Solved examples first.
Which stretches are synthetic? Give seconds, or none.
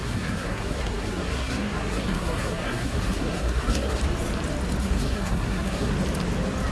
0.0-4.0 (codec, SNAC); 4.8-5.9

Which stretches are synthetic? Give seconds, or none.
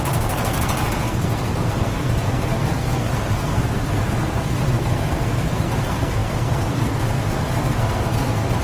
0.0-8.6 (codec, SNAC)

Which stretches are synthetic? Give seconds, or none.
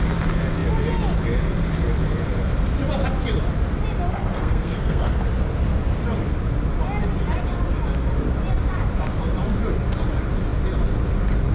4.1-5.2 (codec, SNAC)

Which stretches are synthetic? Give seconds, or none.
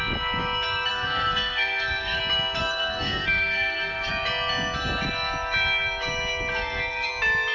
0.9-2.2 (codec, SNAC); 2.6-4.1; 6.5-7.1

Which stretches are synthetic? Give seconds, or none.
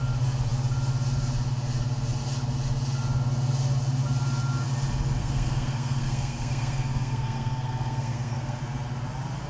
5.2-8.6 (codec, SNAC)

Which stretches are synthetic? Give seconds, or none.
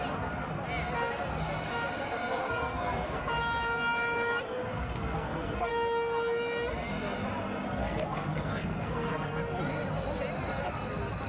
2.4-3.2 (codec, SNAC); 4.7-5.7; 7.8-9.4